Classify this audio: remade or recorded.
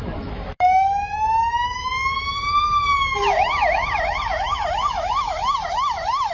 remade